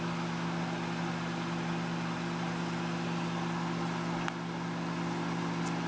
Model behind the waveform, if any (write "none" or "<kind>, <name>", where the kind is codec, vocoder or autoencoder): none